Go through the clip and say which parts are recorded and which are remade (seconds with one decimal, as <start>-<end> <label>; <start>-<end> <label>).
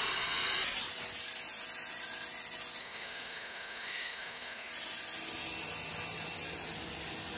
0.0-2.8 recorded; 2.8-4.7 remade; 4.7-7.4 recorded